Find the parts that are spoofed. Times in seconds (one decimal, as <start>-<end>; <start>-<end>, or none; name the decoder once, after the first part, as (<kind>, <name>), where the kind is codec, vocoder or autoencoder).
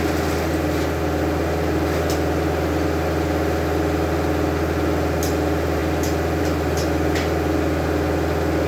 none